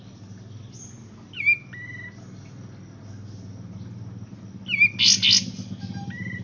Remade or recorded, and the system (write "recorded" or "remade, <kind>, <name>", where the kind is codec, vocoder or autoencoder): recorded